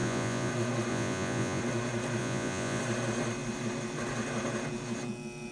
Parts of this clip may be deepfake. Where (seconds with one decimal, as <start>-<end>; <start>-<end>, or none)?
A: 0.0-0.5; 0.9-1.6; 2.2-2.8